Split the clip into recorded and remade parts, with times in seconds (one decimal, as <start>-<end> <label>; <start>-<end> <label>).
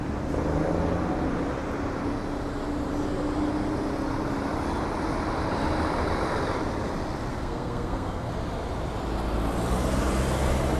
0.0-7.3 recorded; 7.3-8.3 remade; 8.3-10.8 recorded